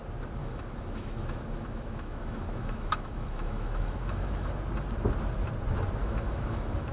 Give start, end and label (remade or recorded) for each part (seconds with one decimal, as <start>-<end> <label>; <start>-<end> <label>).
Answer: 0.0-0.4 recorded; 0.4-4.5 remade; 4.5-6.0 recorded; 6.0-6.9 remade